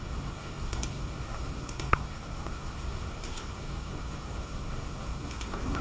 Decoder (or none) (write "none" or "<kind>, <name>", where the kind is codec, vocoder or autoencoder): codec, SNAC